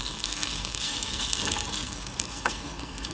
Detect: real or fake fake